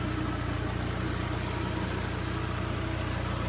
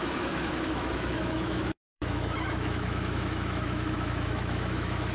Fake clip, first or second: second